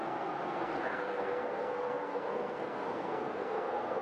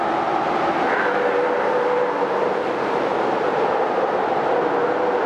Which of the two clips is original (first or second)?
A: second